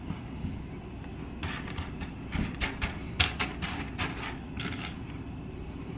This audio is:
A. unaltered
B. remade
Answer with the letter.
A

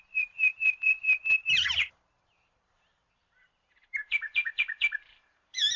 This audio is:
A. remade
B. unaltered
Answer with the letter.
A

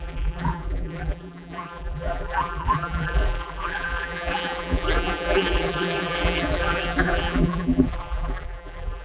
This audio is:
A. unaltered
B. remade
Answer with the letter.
B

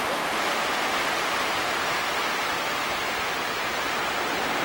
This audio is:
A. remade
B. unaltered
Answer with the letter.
B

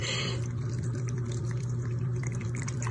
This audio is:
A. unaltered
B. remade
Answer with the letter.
B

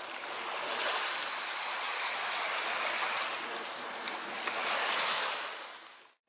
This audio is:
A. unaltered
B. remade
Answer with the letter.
A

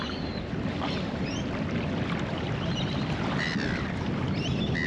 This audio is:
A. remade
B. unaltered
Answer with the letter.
A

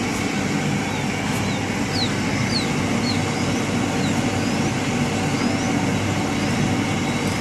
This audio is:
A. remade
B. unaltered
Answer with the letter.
B